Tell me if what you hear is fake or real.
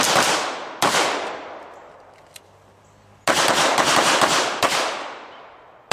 real